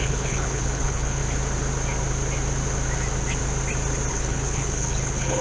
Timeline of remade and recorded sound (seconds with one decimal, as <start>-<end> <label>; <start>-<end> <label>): 0.0-1.2 remade; 1.2-4.1 recorded; 4.1-5.4 remade